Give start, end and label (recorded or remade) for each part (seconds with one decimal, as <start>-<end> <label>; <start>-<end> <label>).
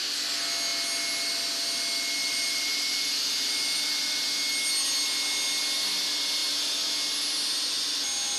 0.0-2.2 recorded; 2.2-4.4 remade; 4.4-8.4 recorded